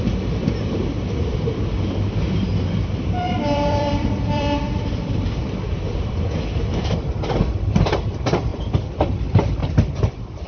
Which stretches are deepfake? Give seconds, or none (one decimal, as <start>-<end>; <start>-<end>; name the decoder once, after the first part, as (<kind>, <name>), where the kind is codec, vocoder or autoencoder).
2.5-6.3 (vocoder, BigVGAN v2); 9.6-10.5